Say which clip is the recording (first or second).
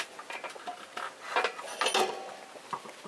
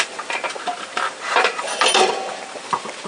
first